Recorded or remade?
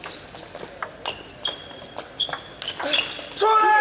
recorded